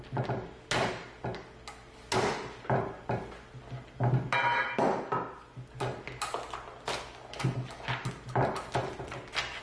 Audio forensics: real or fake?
real